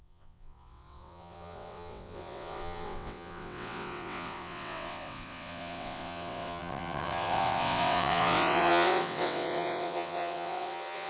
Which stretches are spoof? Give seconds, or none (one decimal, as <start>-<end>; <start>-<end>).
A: 0.0-11.1